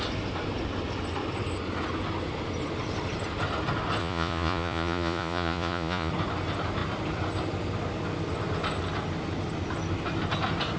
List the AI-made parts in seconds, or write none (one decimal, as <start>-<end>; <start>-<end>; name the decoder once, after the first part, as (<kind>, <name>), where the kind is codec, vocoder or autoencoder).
4.0-6.1 (vocoder, Vocos)